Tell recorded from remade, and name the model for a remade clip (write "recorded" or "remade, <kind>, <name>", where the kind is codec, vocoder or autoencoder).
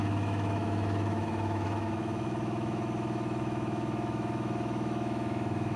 remade, autoencoder, DAC-VAE